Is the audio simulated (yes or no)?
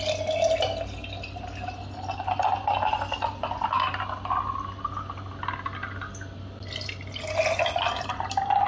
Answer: no